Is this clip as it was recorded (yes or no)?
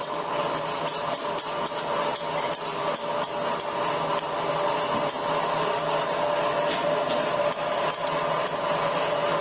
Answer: yes